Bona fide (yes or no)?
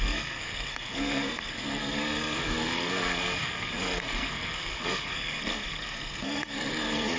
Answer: no